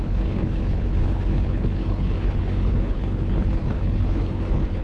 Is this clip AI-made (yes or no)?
yes